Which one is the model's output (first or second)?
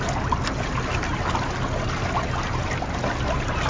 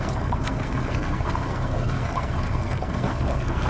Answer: second